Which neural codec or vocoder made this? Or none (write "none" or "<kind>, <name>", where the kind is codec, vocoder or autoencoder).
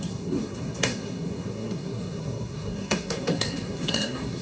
codec, SNAC